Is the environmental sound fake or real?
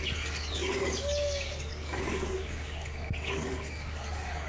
fake